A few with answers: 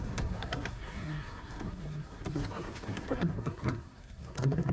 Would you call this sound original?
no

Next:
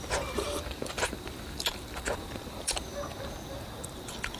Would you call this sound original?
no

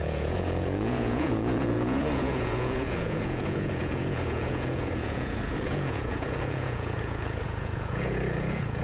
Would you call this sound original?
no